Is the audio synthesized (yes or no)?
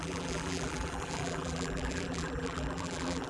yes